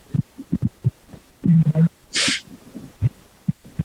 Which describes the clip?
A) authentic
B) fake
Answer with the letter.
B